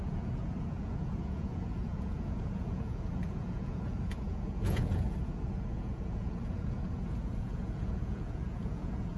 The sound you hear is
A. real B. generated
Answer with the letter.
B